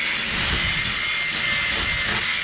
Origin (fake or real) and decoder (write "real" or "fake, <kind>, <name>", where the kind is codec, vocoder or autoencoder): real